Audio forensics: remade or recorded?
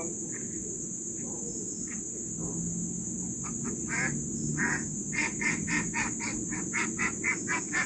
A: recorded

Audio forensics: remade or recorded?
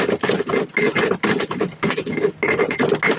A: recorded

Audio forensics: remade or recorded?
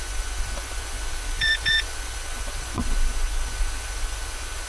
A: remade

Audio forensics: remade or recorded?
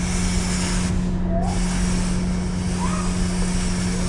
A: recorded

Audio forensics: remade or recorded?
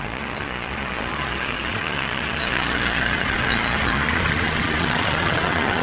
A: remade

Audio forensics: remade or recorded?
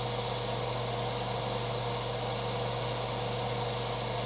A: recorded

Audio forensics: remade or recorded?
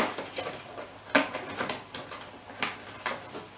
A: recorded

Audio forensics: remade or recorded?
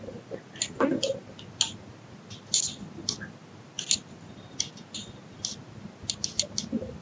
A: recorded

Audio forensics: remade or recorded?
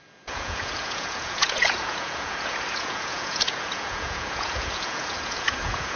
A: remade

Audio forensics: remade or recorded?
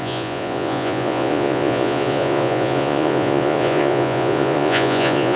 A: remade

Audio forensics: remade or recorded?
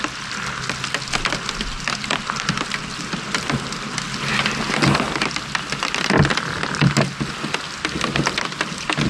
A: recorded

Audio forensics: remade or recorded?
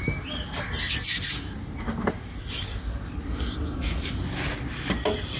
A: recorded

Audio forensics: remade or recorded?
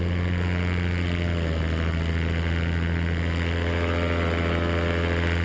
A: recorded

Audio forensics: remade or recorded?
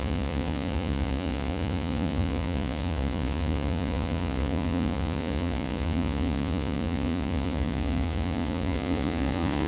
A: remade